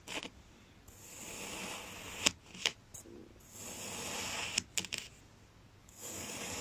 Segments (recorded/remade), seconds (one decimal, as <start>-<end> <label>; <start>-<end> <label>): 0.0-5.8 recorded; 5.8-6.6 remade